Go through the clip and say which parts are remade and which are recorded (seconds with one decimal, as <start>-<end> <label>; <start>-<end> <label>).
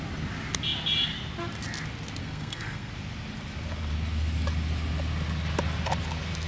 0.0-2.2 recorded; 2.2-2.9 remade; 2.9-6.5 recorded